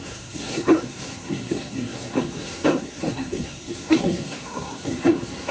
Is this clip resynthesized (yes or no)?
yes